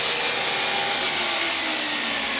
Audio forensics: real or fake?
real